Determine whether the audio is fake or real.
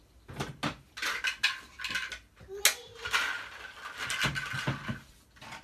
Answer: real